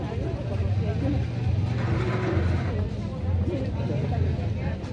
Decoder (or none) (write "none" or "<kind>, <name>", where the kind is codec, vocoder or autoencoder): none